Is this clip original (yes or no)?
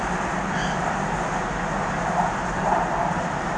yes